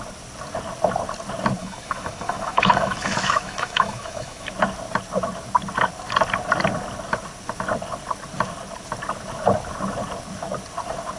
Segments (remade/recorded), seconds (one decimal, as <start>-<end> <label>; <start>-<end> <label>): 0.0-1.6 recorded; 1.6-4.5 remade; 4.5-11.2 recorded